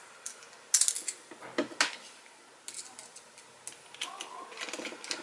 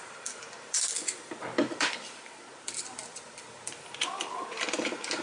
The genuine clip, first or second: first